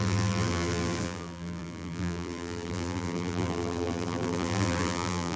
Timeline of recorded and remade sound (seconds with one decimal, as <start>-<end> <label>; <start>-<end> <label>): 0.0-5.4 remade